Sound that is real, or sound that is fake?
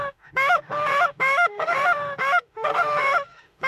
fake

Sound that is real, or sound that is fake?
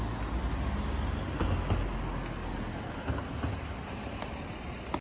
real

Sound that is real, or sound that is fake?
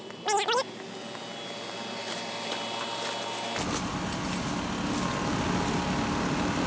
real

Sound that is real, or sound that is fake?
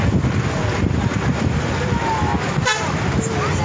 real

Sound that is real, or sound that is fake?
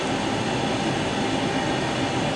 real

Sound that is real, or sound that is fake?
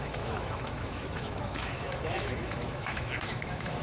fake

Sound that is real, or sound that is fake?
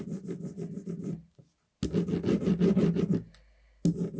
real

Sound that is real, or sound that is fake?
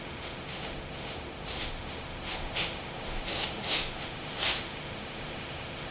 fake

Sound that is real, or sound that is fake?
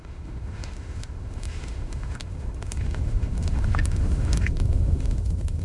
fake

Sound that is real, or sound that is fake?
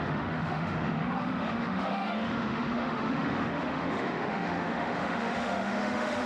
fake